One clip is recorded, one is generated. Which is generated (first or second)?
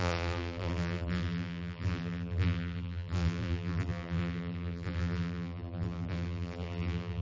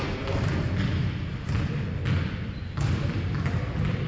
first